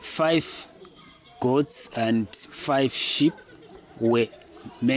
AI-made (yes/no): yes